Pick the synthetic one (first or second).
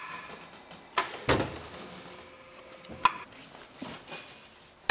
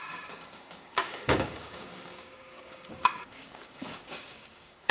second